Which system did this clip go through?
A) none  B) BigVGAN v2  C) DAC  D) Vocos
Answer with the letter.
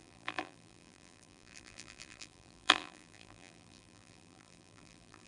B